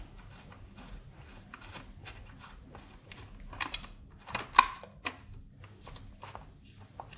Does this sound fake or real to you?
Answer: real